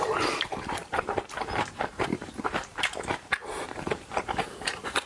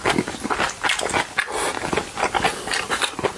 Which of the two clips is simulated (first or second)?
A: first